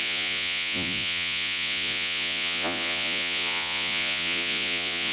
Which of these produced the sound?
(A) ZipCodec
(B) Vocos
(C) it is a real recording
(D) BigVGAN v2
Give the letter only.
B